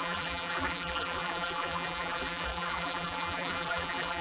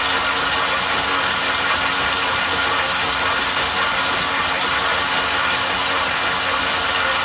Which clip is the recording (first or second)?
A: second